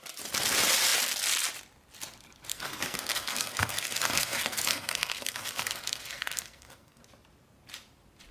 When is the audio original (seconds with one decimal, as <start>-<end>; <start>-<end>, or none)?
0.0-2.5; 7.0-8.3